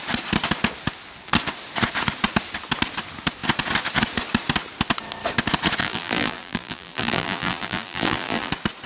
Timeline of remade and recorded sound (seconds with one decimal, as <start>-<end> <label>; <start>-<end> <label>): 0.0-5.8 recorded; 5.8-8.5 remade; 8.5-8.9 recorded